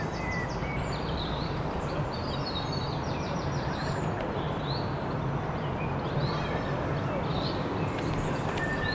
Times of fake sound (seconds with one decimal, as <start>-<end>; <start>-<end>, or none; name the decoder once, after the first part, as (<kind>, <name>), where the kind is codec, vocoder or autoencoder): 0.6-4.7 (vocoder, BigVGAN v2)